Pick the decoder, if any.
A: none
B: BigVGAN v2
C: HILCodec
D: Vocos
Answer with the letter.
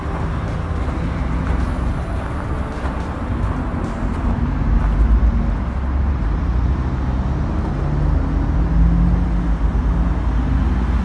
A